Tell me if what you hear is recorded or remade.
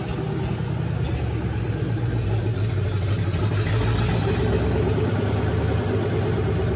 recorded